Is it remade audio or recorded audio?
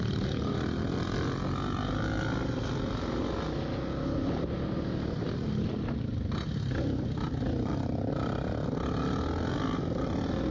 recorded